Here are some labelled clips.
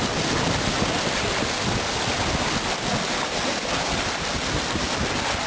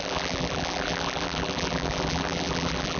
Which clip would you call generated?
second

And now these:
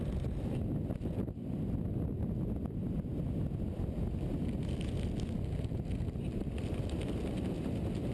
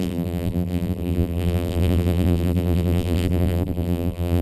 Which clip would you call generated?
second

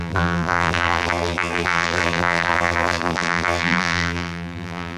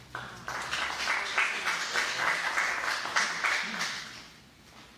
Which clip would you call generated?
first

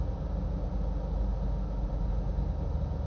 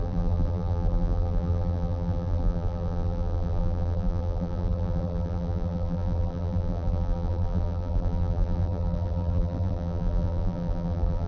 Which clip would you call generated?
second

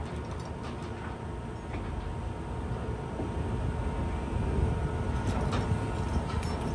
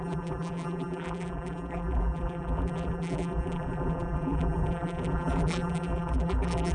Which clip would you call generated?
second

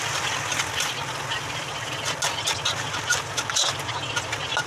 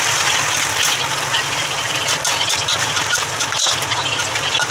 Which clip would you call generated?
second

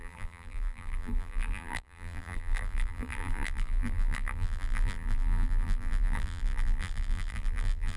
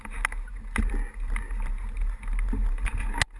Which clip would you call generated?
first